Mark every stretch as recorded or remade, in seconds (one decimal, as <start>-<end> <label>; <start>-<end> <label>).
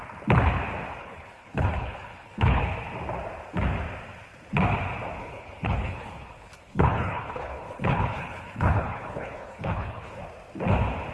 0.0-1.0 recorded; 1.0-2.6 remade; 2.6-5.2 recorded; 5.2-10.2 remade; 10.2-11.1 recorded